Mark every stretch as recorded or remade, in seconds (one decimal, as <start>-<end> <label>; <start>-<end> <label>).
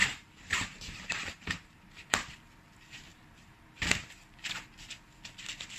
0.0-1.9 remade; 1.9-3.1 recorded; 3.1-4.1 remade; 4.1-5.8 recorded